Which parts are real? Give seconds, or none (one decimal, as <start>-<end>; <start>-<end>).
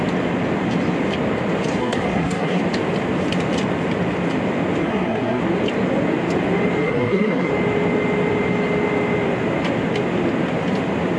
0.0-1.8; 2.6-4.8; 5.4-6.8; 7.5-11.2